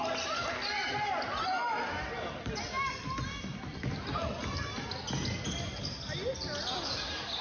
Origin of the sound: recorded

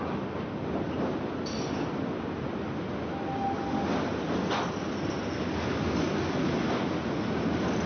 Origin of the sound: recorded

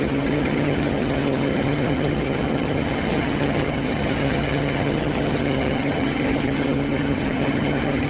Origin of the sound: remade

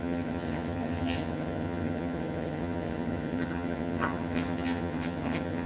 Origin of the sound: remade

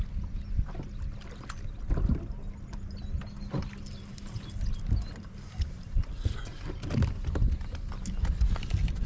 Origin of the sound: recorded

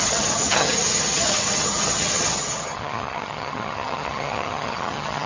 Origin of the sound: remade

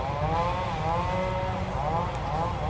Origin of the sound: recorded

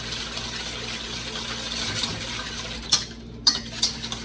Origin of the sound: recorded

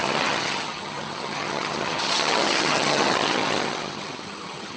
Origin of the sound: remade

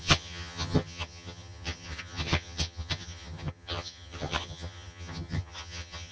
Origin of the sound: remade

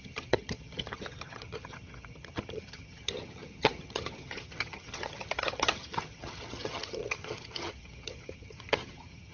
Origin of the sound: remade